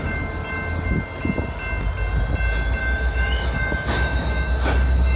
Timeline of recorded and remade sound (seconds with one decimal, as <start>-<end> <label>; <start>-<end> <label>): 0.0-2.8 recorded; 2.8-5.2 remade